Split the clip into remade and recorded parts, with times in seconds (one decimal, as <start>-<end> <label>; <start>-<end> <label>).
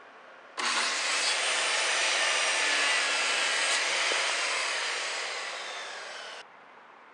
0.0-1.1 remade; 1.1-1.9 recorded; 1.9-7.1 remade